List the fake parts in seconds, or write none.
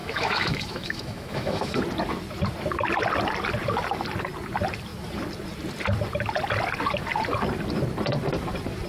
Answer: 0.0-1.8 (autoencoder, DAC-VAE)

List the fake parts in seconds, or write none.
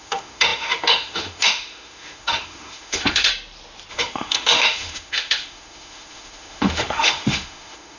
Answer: 0.0-3.3 (autoencoder, DAC-VAE); 3.9-8.0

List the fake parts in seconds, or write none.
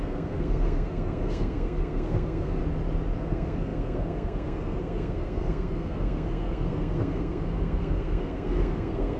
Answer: 0.0-2.6 (codec, SNAC); 3.2-9.2